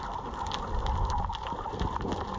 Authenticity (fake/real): real